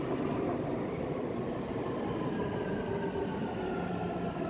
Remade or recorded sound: recorded